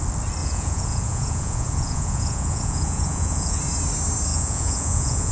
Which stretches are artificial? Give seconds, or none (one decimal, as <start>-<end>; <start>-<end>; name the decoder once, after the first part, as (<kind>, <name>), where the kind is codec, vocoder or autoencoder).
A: 0.4-3.6 (vocoder, Vocos); 4.3-5.3